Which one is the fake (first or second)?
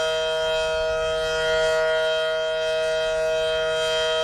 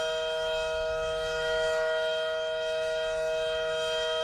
second